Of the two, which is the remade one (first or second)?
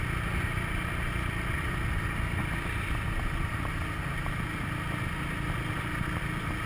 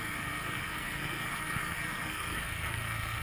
second